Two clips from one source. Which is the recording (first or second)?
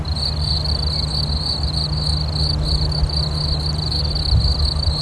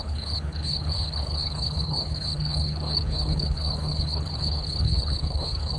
first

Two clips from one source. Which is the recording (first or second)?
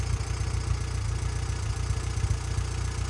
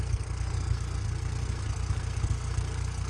first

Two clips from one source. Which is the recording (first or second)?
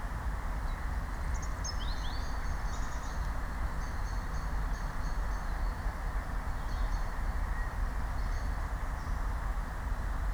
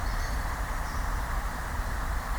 first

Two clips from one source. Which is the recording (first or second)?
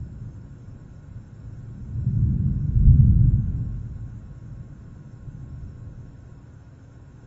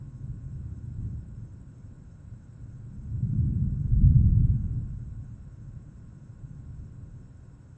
first